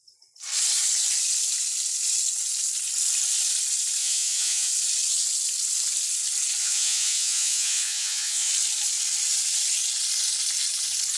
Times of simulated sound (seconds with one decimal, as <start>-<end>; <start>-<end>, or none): 4.0-4.7; 6.6-8.5